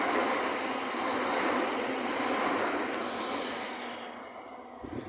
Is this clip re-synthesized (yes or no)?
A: no